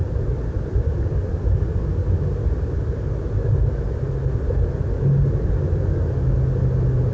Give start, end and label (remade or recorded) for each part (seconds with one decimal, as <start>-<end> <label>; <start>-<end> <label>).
0.0-7.1 recorded